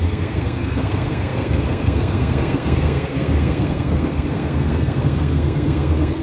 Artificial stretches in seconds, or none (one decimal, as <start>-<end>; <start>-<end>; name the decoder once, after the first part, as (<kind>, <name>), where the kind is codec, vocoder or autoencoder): 0.0-6.2 (codec, SNAC)